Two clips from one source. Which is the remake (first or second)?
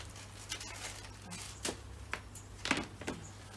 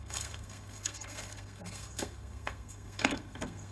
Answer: second